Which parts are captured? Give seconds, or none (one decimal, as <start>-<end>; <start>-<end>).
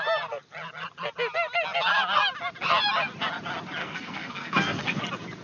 0.0-3.8; 5.0-5.4